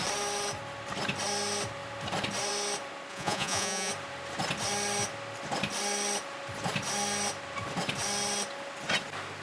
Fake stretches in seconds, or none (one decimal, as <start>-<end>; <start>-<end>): 3.1-3.9